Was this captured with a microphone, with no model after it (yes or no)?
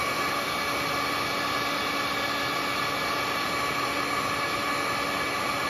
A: yes